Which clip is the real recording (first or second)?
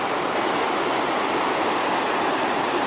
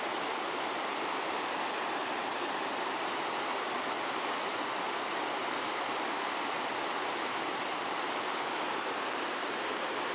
first